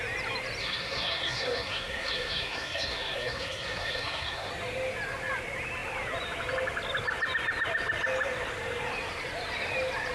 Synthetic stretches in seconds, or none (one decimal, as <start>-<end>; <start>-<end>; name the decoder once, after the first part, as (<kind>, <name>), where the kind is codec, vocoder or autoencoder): 0.6-4.5 (codec, SNAC)